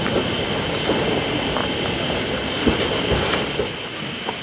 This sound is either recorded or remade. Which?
recorded